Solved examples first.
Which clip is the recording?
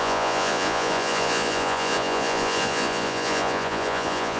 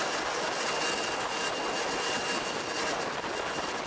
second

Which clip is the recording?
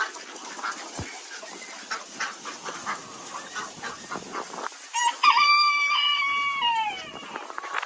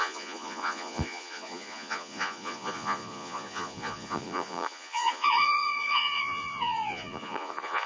first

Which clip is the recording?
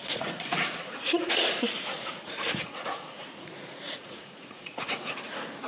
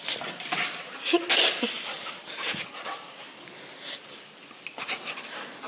second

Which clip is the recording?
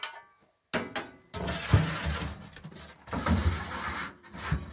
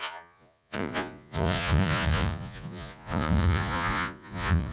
first